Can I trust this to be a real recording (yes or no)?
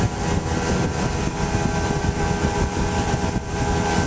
yes